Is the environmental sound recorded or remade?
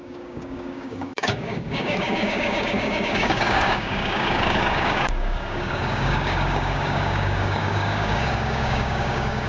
remade